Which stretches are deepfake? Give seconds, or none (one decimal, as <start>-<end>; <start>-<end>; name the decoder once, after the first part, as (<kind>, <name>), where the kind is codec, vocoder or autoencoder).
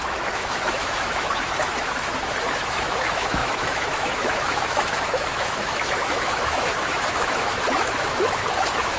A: 0.0-9.0 (autoencoder, DAC-VAE)